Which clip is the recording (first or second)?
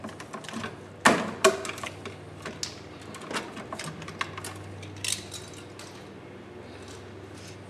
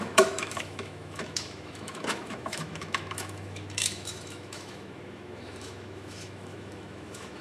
first